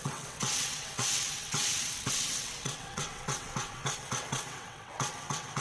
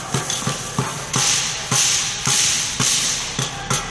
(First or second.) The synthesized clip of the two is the first